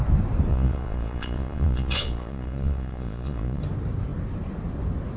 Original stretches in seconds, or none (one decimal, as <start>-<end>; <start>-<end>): 0.0-0.5; 3.6-5.2